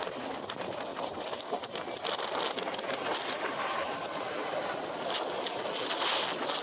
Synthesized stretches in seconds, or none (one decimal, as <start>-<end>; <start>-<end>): none

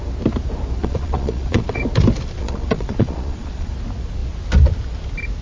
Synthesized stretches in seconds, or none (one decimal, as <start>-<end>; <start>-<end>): 0.8-1.8; 2.4-3.7

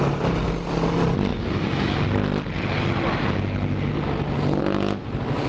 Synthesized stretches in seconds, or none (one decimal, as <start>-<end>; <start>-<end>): none

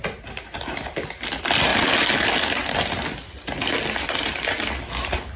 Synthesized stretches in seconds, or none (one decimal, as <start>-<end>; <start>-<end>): none

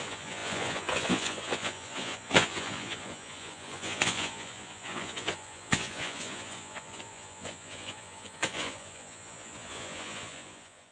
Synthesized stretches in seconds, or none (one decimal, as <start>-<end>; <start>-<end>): 0.0-10.9

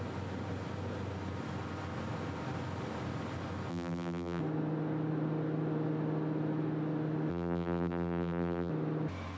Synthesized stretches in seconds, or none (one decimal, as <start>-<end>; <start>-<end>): 3.7-4.4; 7.3-8.7

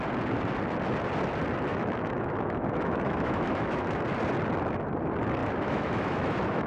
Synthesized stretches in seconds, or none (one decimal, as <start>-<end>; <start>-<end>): 1.7-4.0; 5.4-6.7